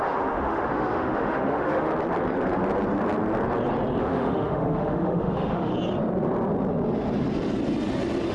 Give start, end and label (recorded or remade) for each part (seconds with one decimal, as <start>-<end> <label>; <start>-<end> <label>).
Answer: 0.0-1.9 remade; 1.9-4.0 recorded; 4.0-5.7 remade; 5.7-8.3 recorded